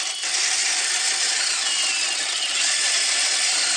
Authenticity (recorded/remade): recorded